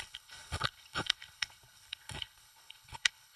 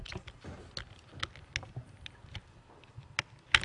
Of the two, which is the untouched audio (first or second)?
second